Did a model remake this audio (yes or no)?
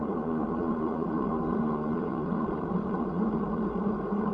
yes